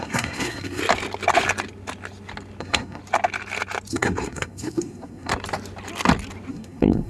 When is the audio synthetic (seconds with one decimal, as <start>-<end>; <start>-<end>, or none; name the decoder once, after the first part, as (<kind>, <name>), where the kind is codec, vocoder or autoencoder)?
0.0-0.8 (codec, SNAC); 2.6-3.0; 3.9-5.3; 6.5-7.1